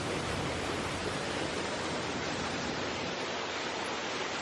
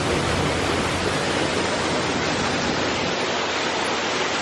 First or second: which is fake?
first